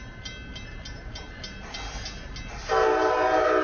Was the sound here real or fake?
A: real